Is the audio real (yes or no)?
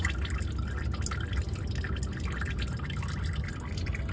yes